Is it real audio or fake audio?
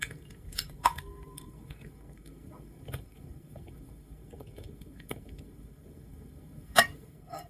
fake